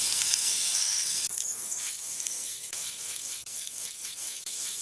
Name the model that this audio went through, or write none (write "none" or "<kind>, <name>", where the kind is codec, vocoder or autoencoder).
codec, SNAC